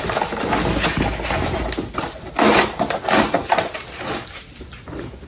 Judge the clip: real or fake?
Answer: real